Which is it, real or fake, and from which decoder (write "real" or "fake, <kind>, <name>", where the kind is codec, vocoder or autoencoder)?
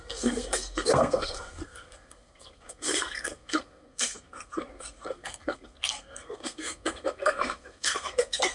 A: fake, codec, SNAC